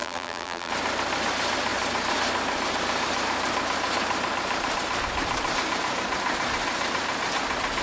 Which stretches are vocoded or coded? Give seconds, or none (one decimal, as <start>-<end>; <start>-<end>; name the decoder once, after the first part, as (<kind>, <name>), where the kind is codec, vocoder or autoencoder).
0.0-0.7 (vocoder, BigVGAN v2)